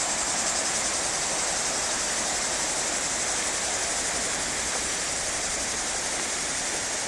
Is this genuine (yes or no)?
yes